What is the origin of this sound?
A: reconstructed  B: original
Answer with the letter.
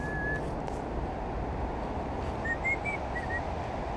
B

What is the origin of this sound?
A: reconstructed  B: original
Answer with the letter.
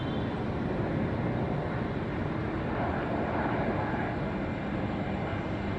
B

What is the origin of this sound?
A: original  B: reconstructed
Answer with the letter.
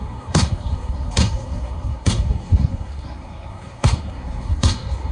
B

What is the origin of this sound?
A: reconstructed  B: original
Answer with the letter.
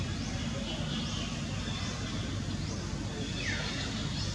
B